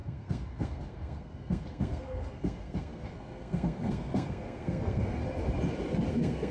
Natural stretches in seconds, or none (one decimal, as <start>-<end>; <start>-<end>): 5.2-6.1